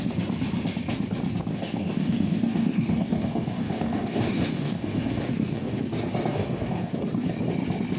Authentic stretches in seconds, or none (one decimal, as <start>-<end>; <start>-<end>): 0.0-1.5; 5.8-6.3; 7.0-8.0